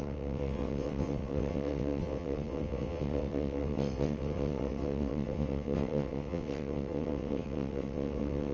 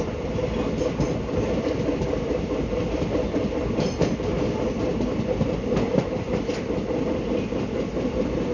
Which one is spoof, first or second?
first